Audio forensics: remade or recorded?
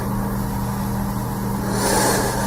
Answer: recorded